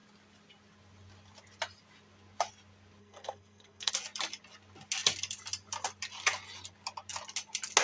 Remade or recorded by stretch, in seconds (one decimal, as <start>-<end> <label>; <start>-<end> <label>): 0.0-3.0 recorded; 3.0-3.9 remade; 3.9-7.8 recorded